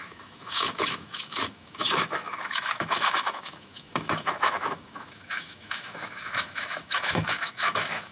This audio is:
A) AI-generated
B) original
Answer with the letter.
A